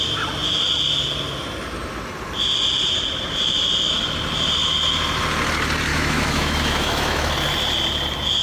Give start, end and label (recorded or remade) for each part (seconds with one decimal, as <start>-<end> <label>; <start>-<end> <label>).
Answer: 0.0-5.9 recorded; 5.9-7.3 remade; 7.3-8.4 recorded